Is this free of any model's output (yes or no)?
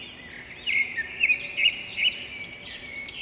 yes